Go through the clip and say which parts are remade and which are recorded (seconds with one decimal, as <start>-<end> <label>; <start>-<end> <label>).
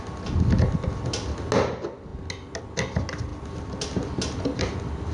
0.0-5.1 recorded